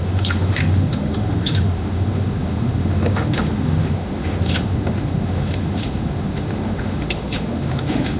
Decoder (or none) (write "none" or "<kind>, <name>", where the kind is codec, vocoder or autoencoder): autoencoder, DAC-VAE